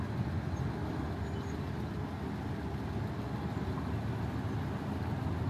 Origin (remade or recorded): recorded